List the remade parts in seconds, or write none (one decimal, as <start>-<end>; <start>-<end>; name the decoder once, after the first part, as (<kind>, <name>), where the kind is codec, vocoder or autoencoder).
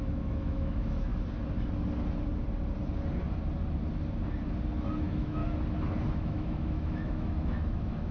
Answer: 0.0-1.1 (autoencoder, DAC-VAE); 5.0-5.4; 6.1-8.1